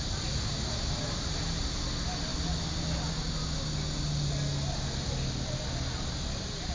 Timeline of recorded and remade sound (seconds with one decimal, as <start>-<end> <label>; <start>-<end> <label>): 0.0-6.7 recorded